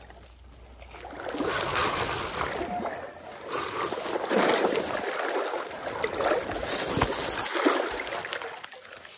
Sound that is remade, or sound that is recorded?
recorded